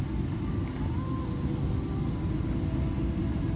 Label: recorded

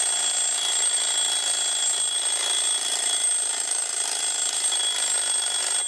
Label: recorded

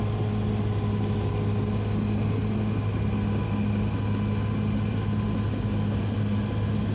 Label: recorded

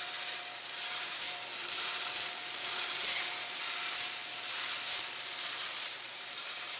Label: remade